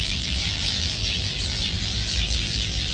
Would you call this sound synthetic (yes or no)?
yes